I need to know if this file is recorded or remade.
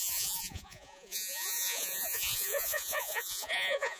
remade